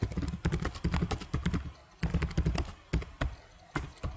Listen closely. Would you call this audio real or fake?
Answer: real